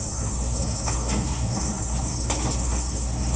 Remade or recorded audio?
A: remade